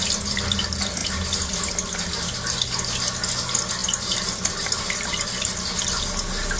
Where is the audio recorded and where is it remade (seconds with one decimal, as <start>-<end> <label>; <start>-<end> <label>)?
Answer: 0.0-3.8 recorded; 3.8-5.9 remade; 5.9-6.6 recorded